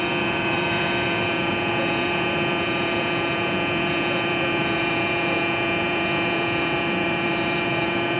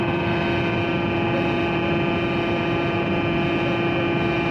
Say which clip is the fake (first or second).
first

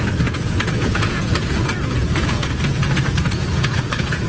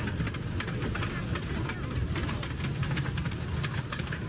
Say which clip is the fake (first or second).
first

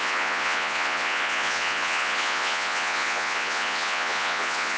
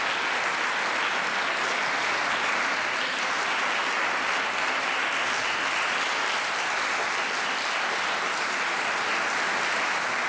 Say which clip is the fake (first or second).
first